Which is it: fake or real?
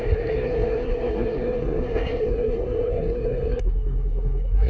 fake